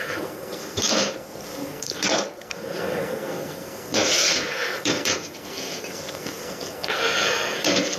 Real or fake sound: fake